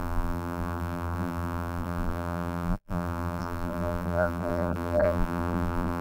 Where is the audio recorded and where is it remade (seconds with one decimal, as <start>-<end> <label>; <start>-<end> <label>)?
0.0-6.0 remade